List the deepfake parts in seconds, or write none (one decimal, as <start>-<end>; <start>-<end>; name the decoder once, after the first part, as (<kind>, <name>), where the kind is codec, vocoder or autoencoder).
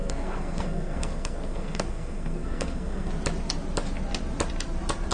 0.0-3.1 (codec, SNAC)